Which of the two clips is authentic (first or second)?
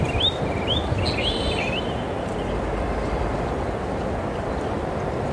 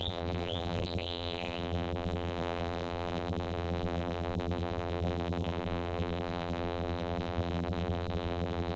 first